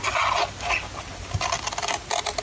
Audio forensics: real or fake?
real